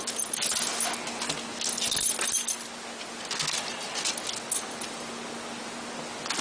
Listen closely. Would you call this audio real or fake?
real